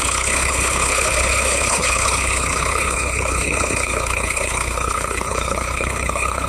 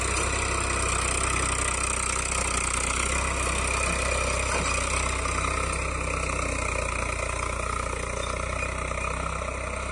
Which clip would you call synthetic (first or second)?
first